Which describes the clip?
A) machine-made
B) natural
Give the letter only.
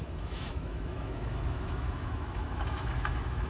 A